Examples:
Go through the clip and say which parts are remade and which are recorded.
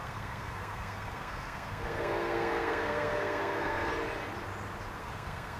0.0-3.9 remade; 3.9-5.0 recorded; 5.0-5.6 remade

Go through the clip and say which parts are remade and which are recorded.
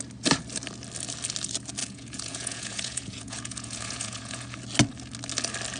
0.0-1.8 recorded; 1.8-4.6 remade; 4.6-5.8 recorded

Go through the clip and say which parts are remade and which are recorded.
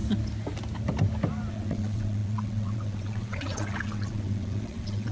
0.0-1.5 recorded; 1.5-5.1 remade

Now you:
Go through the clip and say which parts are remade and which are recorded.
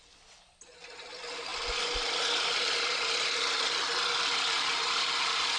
0.0-5.6 recorded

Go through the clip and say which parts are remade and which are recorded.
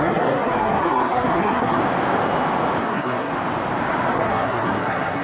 0.0-1.8 remade; 1.8-2.8 recorded; 2.8-3.3 remade; 3.3-4.1 recorded; 4.1-5.2 remade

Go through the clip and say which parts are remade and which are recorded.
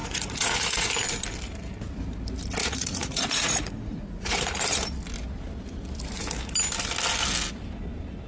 0.0-0.9 remade; 0.9-2.6 recorded; 2.6-4.6 remade; 4.6-8.3 recorded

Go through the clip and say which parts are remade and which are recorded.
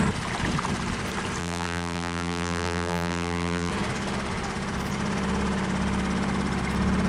0.0-1.4 recorded; 1.4-3.7 remade; 3.7-7.1 recorded